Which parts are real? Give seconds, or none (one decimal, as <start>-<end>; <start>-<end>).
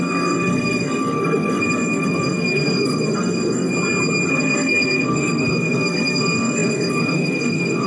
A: 3.7-4.3